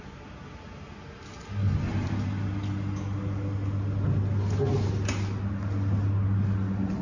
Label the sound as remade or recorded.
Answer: recorded